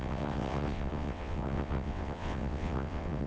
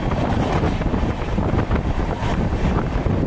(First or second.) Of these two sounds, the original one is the second